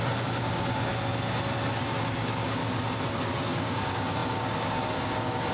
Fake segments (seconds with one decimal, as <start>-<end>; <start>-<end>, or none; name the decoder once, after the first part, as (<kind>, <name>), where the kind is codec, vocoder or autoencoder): 0.0-0.9 (codec, DAC); 1.8-2.6; 3.1-5.5